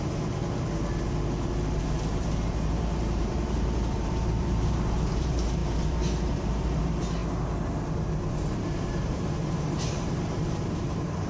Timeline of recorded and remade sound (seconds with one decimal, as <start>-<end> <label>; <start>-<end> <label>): 0.0-0.4 remade; 0.4-1.8 recorded; 1.8-7.2 remade; 7.2-8.1 recorded; 8.1-11.3 remade